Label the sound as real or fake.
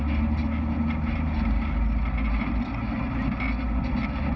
real